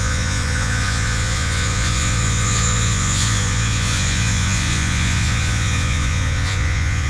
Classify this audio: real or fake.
fake